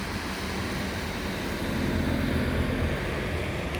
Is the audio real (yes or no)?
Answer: yes